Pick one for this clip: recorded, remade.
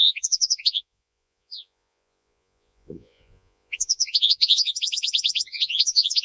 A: remade